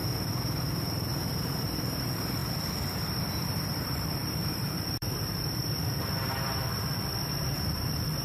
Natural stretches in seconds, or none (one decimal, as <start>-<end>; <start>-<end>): 0.0-2.0; 2.4-3.0